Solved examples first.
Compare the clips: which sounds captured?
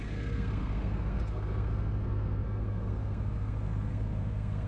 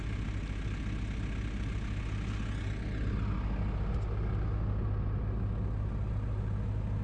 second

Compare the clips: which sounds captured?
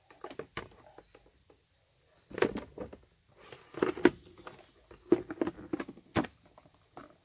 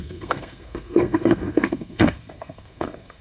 first